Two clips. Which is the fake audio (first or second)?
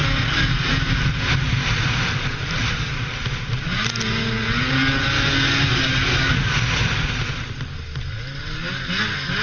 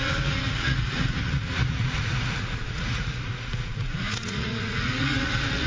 second